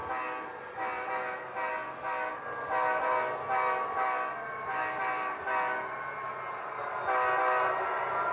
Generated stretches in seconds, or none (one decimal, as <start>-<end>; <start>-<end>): none

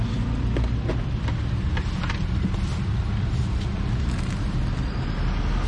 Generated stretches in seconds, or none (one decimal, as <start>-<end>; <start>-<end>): none